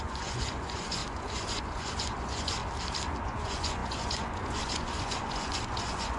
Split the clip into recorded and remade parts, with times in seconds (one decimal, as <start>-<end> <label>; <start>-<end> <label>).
0.0-2.6 remade; 2.6-3.2 recorded; 3.2-6.2 remade